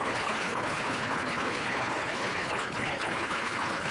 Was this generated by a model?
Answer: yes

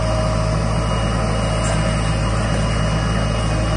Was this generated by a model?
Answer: no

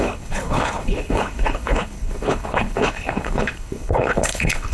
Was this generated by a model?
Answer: yes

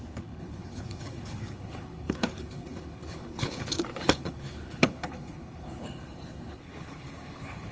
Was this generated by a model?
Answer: yes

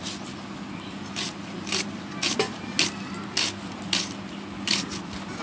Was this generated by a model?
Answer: no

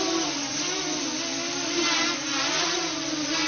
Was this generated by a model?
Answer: no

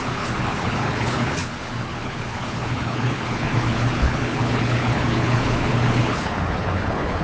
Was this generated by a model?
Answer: yes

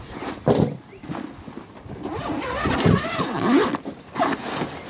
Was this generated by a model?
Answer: no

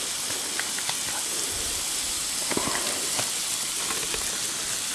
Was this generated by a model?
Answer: no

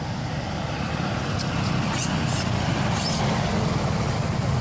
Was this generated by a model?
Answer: no